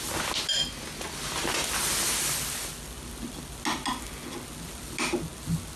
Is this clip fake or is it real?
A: real